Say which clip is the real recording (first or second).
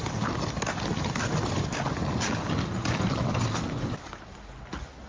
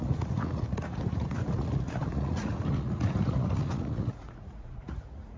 first